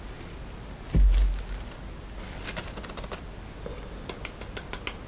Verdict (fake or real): real